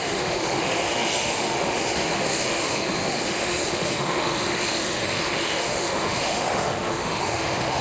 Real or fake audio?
fake